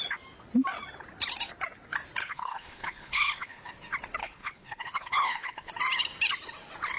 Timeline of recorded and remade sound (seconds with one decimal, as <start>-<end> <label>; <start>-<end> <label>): 0.0-2.2 recorded; 2.2-3.7 remade; 3.7-4.2 recorded; 4.2-5.7 remade; 5.7-7.0 recorded